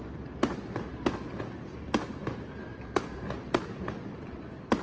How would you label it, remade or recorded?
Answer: recorded